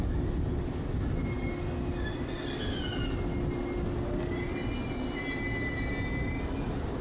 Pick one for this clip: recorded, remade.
recorded